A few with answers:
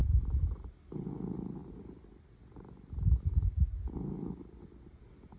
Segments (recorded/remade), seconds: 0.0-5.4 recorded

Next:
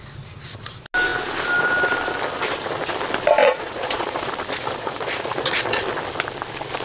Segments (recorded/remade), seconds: 0.0-3.4 recorded; 3.4-4.3 remade; 4.3-4.8 recorded; 4.8-5.8 remade; 5.8-6.8 recorded

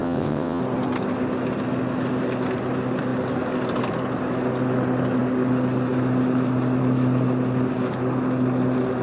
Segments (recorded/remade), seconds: 0.0-0.6 remade; 0.6-9.0 recorded